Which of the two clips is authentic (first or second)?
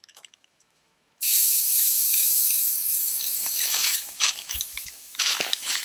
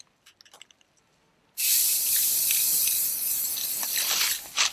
second